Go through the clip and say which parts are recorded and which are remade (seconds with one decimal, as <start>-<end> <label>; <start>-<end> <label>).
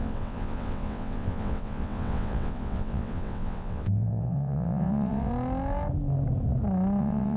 0.0-5.3 remade; 5.3-7.0 recorded; 7.0-7.4 remade